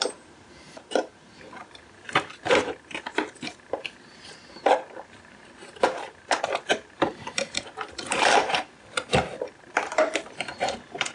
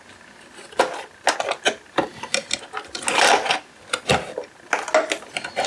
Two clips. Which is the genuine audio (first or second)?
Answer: second